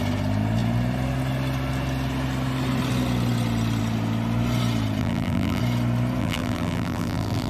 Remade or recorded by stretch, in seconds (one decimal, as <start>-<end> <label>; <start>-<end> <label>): 0.0-5.0 recorded; 5.0-5.6 remade; 5.6-6.2 recorded; 6.2-7.5 remade